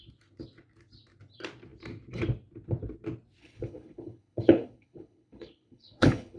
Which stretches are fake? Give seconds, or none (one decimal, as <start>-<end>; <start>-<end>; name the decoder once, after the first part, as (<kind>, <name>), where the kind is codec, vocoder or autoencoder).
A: 3.4-6.4 (codec, HILCodec)

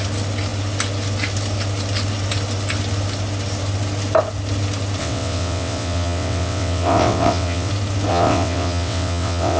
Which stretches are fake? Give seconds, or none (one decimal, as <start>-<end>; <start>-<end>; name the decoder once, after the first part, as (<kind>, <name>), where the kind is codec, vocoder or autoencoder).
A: 5.0-7.7 (vocoder, WaveNeXt); 8.1-9.6

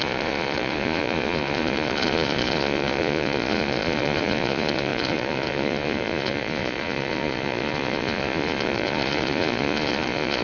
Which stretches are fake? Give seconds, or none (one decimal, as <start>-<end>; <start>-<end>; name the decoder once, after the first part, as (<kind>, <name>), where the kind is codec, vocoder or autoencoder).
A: 0.0-10.4 (vocoder, Vocos)

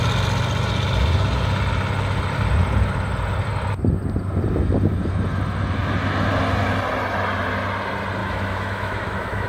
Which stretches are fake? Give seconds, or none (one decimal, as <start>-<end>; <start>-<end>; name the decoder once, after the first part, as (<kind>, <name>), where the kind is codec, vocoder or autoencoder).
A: 8.2-9.5 (autoencoder, DAC-VAE)

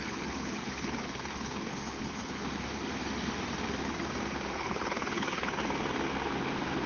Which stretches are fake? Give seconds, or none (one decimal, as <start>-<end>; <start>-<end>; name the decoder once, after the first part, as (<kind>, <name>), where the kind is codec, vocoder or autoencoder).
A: 0.0-2.4 (codec, HILCodec); 4.5-5.6

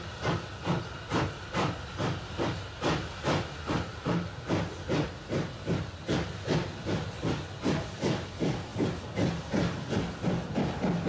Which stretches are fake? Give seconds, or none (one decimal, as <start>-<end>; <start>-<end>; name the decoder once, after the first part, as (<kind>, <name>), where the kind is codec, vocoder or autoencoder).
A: none

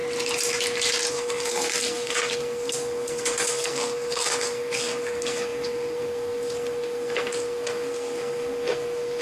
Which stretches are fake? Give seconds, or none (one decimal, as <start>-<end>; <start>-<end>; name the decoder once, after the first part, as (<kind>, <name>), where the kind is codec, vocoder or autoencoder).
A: 1.1-9.2 (codec, SNAC)